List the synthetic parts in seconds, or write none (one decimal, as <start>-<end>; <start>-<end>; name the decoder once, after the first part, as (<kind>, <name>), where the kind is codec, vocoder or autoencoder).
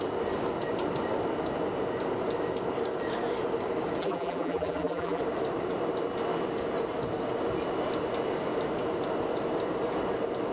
4.0-5.2 (vocoder, BigVGAN v2)